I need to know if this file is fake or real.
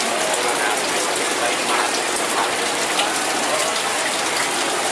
real